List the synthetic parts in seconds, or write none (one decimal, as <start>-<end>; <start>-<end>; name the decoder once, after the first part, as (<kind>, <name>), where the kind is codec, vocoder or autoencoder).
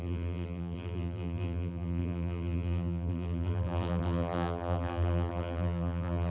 0.0-6.3 (vocoder, BigVGAN v2)